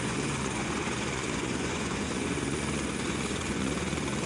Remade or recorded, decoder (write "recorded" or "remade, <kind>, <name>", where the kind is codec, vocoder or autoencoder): remade, vocoder, Vocos